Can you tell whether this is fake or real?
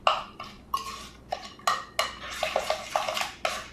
real